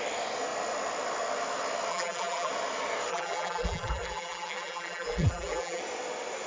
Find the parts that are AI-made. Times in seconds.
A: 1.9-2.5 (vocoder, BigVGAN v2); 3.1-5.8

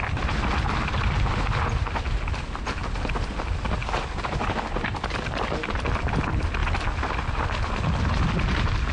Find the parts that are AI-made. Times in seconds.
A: none

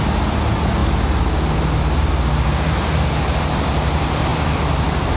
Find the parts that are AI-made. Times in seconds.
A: none

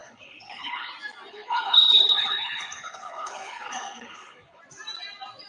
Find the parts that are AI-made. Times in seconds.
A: 0.0-0.9 (codec, HILCodec); 1.3-4.6